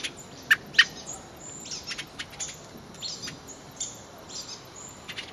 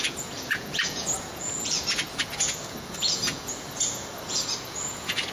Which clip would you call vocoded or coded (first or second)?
second